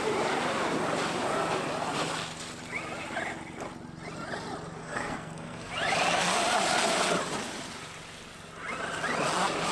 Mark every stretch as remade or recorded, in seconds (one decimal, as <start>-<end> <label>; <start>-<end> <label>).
0.0-4.8 recorded; 4.8-5.7 remade; 5.7-9.7 recorded